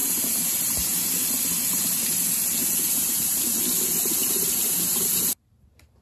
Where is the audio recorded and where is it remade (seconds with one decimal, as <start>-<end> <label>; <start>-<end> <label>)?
0.0-1.1 remade; 1.1-2.6 recorded; 2.6-3.4 remade; 3.4-4.2 recorded; 4.2-6.0 remade